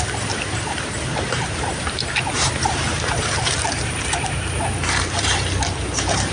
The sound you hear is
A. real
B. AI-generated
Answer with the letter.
B